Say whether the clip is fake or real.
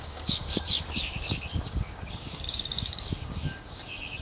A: fake